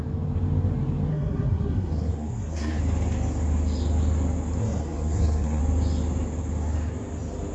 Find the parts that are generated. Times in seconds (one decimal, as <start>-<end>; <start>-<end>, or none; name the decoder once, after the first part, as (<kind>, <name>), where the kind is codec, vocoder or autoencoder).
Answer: 1.1-2.8 (codec, SNAC); 4.6-5.6